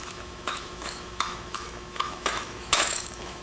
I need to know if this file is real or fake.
fake